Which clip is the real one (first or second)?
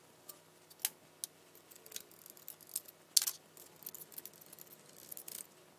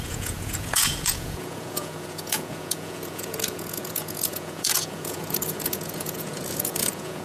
first